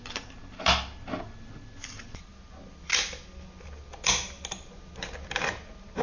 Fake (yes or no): no